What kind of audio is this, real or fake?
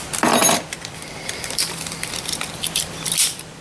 fake